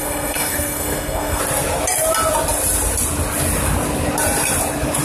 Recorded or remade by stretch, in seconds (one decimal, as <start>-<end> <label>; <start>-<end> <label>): 0.0-1.4 remade; 1.4-5.0 recorded